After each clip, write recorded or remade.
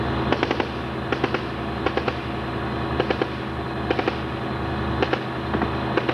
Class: recorded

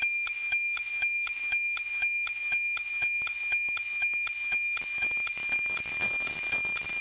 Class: remade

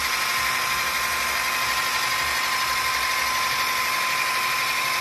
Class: recorded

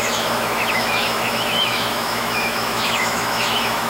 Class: remade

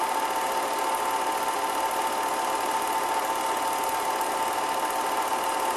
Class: recorded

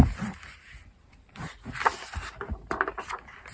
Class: recorded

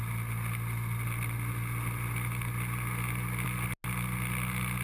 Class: recorded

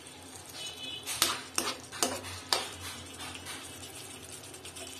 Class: recorded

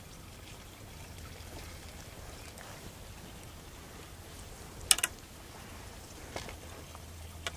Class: recorded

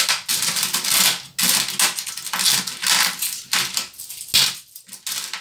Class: recorded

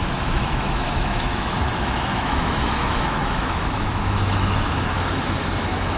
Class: remade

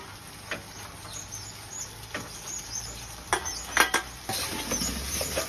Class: recorded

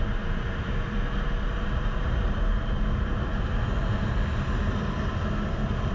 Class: recorded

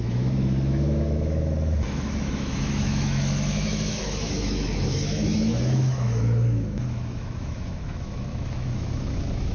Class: remade